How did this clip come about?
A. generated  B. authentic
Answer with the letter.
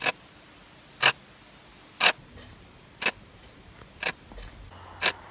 B